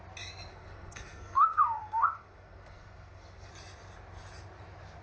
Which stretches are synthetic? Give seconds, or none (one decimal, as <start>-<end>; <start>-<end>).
0.5-3.5